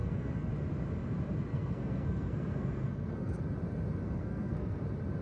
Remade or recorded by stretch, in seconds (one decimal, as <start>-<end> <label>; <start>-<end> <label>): 0.0-0.5 remade; 0.5-1.5 recorded; 1.5-3.4 remade; 3.4-4.0 recorded; 4.0-4.8 remade; 4.8-5.2 recorded